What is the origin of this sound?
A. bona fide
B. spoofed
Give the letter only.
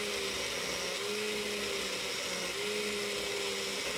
A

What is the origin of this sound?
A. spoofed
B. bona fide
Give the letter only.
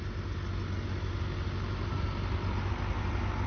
B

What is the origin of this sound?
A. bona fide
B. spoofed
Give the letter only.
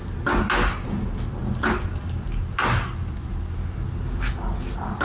A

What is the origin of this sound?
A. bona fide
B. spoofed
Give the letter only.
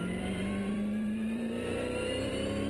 B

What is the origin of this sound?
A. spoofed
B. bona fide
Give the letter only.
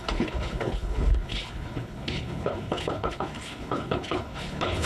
A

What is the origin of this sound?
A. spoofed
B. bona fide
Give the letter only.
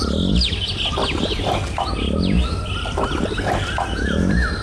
B